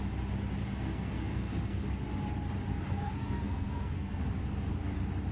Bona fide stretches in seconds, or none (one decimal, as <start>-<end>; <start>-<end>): 0.0-0.6; 1.8-2.7; 4.2-5.3